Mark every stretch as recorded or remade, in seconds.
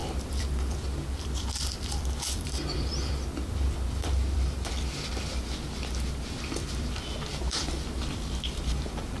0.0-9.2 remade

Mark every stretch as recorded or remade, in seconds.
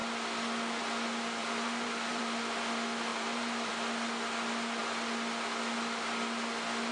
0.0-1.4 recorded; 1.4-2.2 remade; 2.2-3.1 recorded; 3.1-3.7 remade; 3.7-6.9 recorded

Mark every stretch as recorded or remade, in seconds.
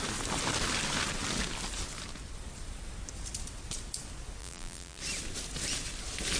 0.0-4.4 recorded; 4.4-5.0 remade; 5.0-6.4 recorded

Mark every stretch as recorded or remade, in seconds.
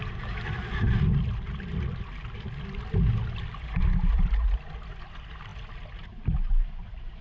0.0-7.2 recorded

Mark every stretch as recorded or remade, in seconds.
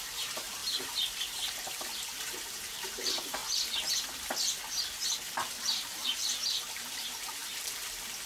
0.0-3.4 remade; 3.4-5.6 recorded; 5.6-7.4 remade; 7.4-8.3 recorded